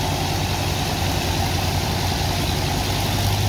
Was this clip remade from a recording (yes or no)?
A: no